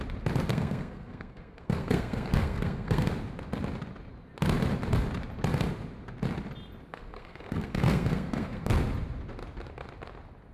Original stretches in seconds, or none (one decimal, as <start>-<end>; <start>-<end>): 0.0-0.5; 3.1-6.9; 8.7-10.5